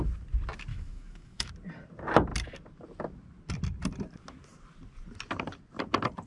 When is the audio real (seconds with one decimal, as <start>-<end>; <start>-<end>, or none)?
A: 0.0-0.7; 1.5-6.3